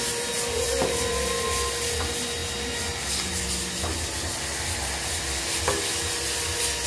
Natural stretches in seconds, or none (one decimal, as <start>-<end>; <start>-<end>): 0.0-6.9